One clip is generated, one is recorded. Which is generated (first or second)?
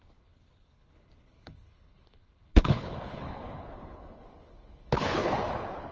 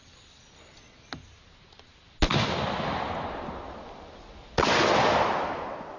first